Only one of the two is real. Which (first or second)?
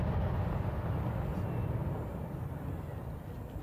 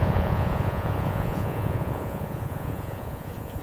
first